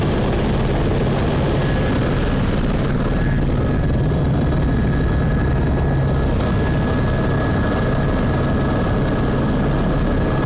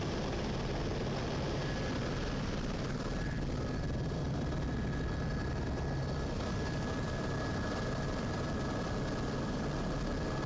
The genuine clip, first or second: first